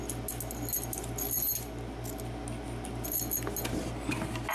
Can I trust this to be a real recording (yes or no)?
yes